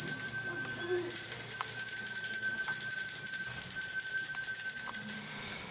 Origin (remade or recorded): remade